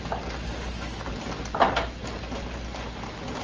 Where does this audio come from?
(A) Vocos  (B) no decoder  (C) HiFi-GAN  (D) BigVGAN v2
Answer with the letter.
B